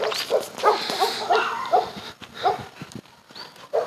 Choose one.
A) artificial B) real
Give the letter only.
B